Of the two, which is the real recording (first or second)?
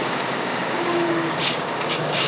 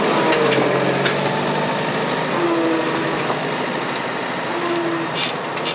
second